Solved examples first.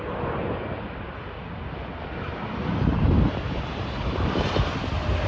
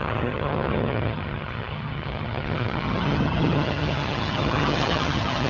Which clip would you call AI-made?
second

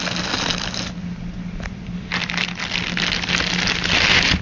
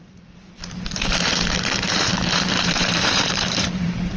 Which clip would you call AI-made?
second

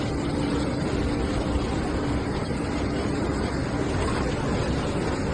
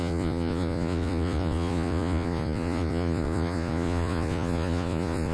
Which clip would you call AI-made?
second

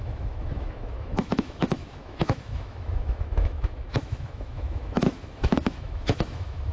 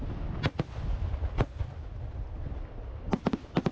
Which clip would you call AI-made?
first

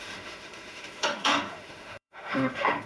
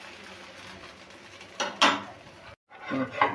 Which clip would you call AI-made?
first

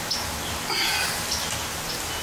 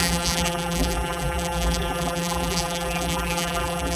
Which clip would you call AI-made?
second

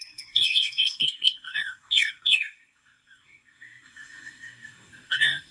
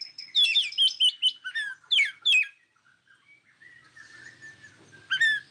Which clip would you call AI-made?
first